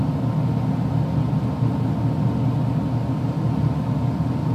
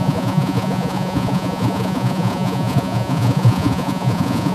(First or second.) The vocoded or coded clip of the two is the second